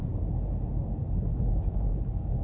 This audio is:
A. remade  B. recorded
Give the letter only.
B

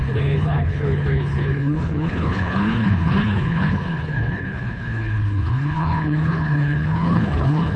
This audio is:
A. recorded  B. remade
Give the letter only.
B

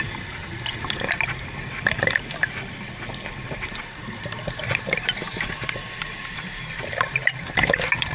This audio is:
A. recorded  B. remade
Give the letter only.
A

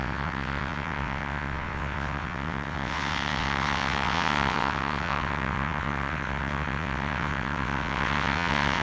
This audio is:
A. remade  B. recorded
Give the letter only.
A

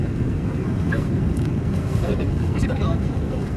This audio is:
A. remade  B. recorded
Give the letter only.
A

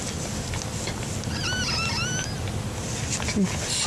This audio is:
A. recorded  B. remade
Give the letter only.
A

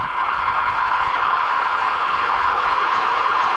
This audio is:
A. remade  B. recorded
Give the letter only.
A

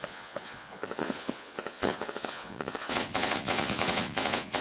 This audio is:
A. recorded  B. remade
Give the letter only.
B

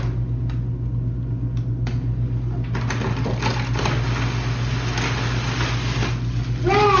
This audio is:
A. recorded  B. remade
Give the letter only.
A